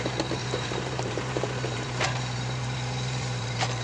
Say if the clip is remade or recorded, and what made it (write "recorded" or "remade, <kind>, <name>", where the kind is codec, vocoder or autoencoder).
remade, vocoder, BigVGAN v2